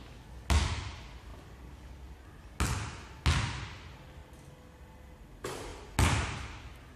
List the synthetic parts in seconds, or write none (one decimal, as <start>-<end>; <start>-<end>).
none

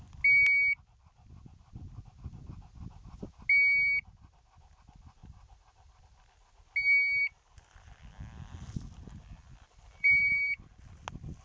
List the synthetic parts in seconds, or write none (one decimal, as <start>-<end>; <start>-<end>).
5.2-6.0; 7.2-10.7

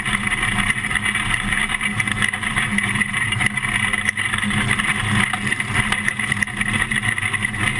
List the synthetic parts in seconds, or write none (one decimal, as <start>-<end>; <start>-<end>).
2.5-3.4

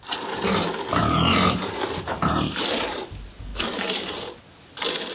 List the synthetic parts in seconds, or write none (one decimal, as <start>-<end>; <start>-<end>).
1.0-3.1; 3.5-4.4

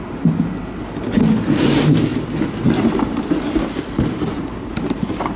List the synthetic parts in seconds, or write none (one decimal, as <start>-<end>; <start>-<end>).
2.1-5.4

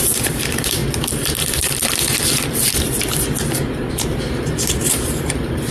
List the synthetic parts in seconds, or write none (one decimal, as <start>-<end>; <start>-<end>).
0.0-0.8; 3.9-5.7

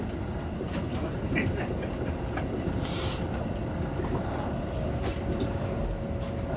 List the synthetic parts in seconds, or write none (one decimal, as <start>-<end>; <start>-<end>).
0.9-1.5

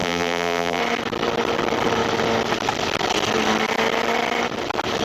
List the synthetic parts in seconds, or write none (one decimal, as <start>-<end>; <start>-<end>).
0.0-0.8